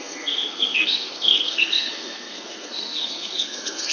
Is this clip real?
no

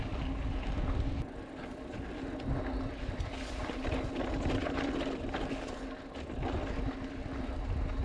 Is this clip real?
yes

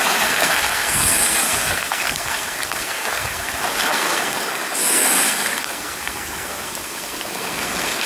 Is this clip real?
no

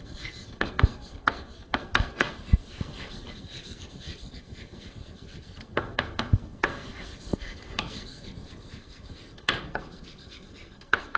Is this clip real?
no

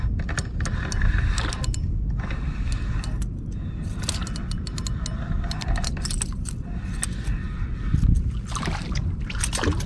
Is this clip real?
yes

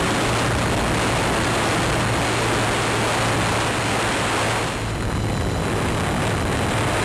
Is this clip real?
yes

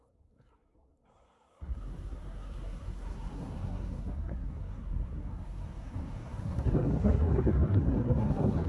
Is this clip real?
no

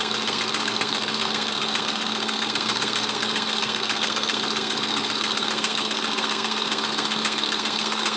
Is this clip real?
no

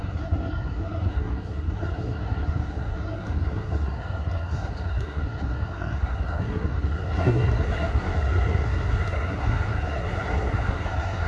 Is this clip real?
no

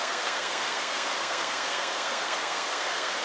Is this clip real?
no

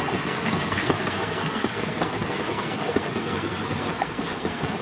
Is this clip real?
no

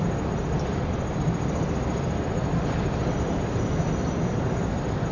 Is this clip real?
yes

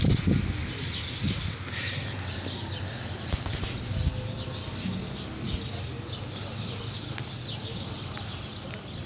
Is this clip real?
yes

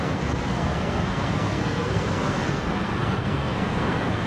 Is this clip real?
no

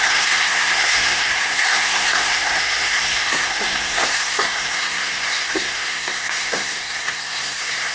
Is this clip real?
no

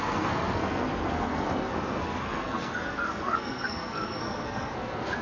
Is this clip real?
no